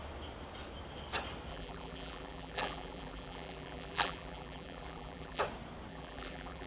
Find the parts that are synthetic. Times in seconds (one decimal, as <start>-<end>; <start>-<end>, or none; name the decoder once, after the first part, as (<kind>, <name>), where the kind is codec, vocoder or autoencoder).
1.5-5.4 (vocoder, BigVGAN v2); 5.9-6.7